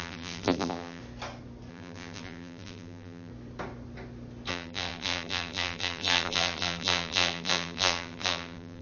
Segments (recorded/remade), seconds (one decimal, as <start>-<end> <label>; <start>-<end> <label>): 0.0-1.0 remade; 1.0-1.7 recorded; 1.7-3.3 remade; 3.3-4.5 recorded; 4.5-8.8 remade